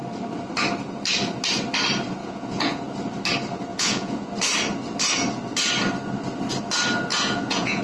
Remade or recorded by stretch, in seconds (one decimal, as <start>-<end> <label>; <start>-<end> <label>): 0.0-2.2 recorded; 2.2-2.8 remade; 2.8-3.7 recorded; 3.7-4.3 remade; 4.3-7.1 recorded; 7.1-7.8 remade